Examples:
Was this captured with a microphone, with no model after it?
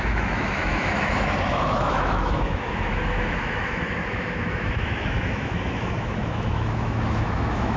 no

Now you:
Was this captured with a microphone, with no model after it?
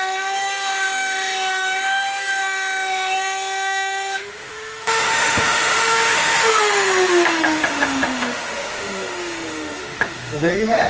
no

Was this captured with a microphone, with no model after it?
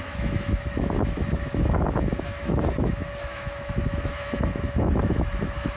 no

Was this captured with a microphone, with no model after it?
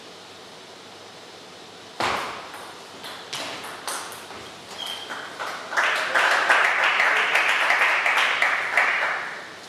yes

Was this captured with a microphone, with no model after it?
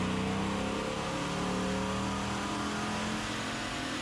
yes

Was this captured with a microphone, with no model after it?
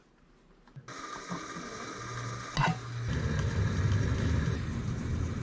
yes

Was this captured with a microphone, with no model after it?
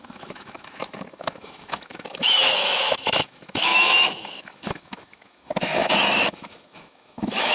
no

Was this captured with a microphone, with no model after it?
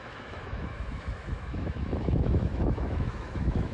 no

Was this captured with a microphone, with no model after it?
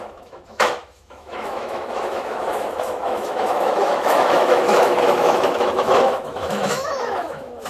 no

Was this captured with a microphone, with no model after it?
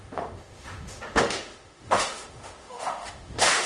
no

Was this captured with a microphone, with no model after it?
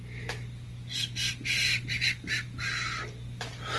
yes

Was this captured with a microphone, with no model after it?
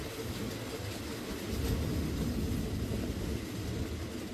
yes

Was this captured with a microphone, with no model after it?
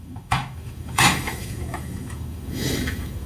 no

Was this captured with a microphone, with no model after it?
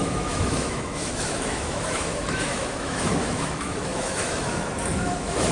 no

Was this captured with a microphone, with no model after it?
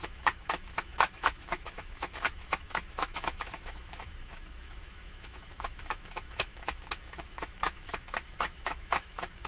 no